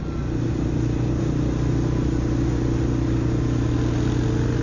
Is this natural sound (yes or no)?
yes